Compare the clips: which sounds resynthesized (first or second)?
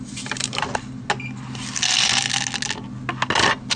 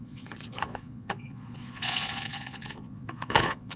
second